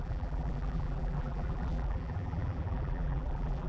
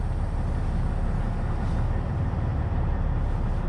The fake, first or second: first